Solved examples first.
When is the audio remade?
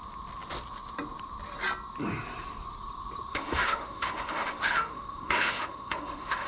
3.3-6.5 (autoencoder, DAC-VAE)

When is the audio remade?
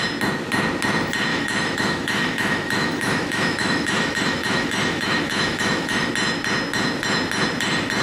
1.3-6.1 (autoencoder, DAC-VAE)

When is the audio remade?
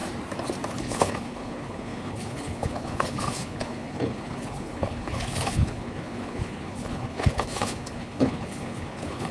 0.7-9.3 (codec, HILCodec)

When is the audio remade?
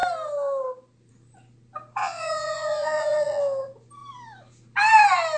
2.0-3.4 (vocoder, Vocos)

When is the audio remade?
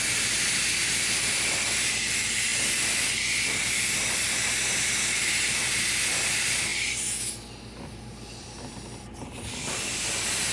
none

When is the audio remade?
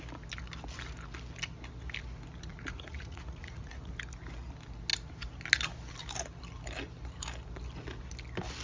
2.5-3.9 (vocoder, Vocos)